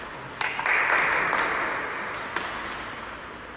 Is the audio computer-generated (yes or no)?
no